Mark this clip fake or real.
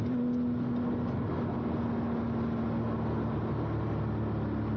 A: real